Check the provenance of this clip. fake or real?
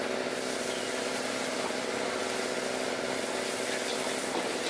real